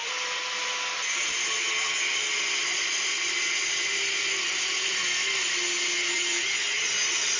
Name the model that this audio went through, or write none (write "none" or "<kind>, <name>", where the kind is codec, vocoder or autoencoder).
none